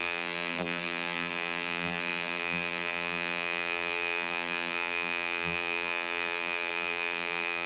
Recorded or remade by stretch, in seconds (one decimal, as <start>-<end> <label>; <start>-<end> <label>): 0.0-7.7 remade